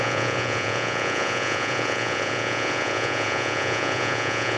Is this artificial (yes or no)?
yes